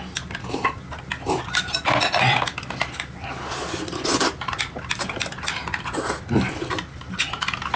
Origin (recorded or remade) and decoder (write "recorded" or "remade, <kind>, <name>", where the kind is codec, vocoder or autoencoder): recorded